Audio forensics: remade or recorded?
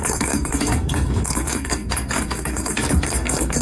remade